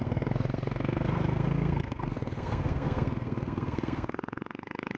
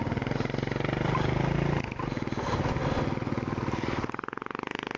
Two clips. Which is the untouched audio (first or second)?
second